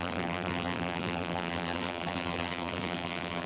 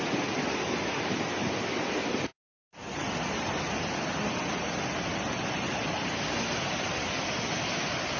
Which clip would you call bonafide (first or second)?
second